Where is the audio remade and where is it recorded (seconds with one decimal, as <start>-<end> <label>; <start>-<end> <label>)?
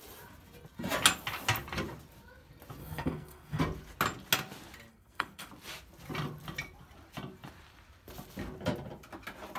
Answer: 0.0-2.8 recorded; 2.8-3.6 remade; 3.6-4.9 recorded; 4.9-5.5 remade; 5.5-9.6 recorded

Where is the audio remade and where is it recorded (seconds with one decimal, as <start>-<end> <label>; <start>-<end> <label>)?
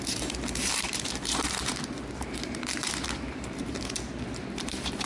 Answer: 0.0-5.1 remade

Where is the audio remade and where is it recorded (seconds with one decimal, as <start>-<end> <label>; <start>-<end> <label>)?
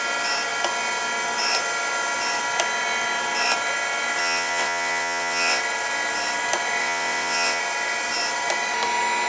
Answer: 0.0-4.2 recorded; 4.2-5.6 remade; 5.6-6.8 recorded; 6.8-7.6 remade; 7.6-9.3 recorded